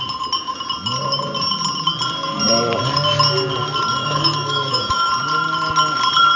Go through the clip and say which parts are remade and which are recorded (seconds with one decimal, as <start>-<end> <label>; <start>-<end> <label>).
0.0-4.0 recorded; 4.0-5.1 remade; 5.1-6.4 recorded

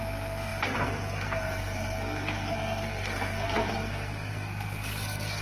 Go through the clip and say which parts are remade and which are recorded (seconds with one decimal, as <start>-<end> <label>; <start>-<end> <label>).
0.0-5.4 remade

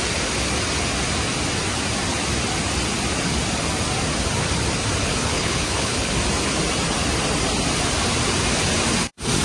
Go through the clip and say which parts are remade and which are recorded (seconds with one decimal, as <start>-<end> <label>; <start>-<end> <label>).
0.0-5.0 recorded; 5.0-6.1 remade; 6.1-9.4 recorded

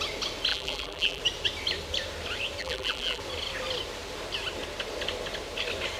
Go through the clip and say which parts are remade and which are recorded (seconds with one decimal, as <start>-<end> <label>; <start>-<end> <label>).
0.0-0.5 recorded; 0.5-1.2 remade; 1.2-2.6 recorded; 2.6-3.2 remade; 3.2-6.0 recorded

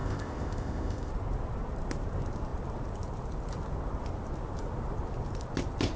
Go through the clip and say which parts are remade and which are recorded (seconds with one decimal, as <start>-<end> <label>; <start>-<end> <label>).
0.0-1.1 remade; 1.1-6.0 recorded